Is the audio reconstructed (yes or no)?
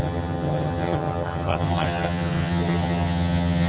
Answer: yes